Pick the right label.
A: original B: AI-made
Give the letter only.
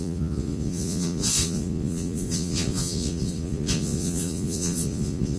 B